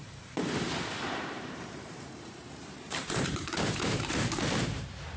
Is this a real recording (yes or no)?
no